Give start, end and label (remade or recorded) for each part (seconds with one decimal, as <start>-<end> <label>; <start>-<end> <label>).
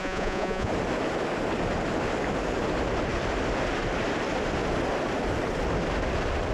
0.0-0.7 remade; 0.7-6.5 recorded